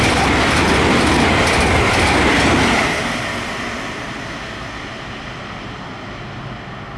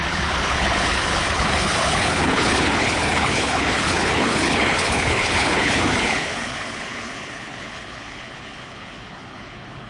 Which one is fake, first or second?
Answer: second